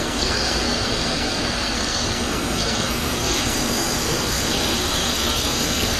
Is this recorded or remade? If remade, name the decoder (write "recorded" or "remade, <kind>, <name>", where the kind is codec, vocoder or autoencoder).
remade, codec, SNAC